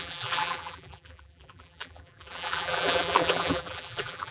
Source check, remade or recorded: remade